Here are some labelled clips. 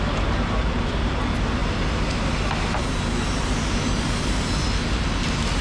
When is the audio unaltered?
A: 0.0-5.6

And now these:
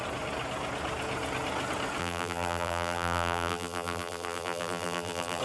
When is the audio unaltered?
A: 0.0-2.0

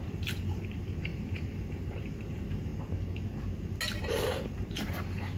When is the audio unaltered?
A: 2.7-4.0